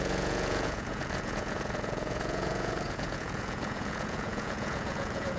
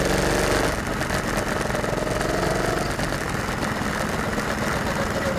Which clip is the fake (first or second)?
first